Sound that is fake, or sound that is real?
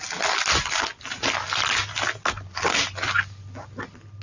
real